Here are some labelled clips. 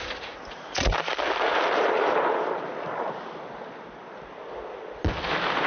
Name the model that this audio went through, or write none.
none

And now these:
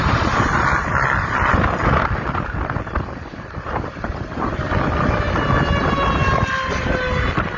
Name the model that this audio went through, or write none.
none